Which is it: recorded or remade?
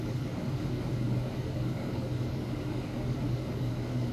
remade